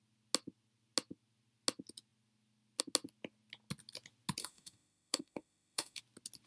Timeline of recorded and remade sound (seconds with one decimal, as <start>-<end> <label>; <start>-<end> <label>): 0.0-4.4 recorded; 4.4-6.0 remade; 6.0-6.5 recorded